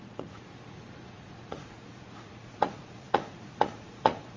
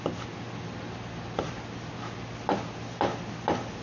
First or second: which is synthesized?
first